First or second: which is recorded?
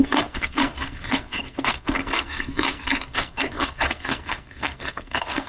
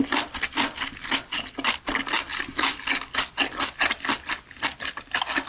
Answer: second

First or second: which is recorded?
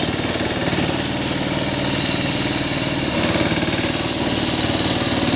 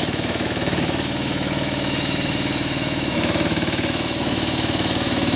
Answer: first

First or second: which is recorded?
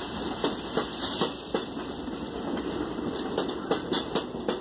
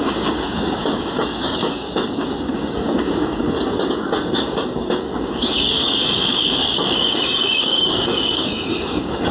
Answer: first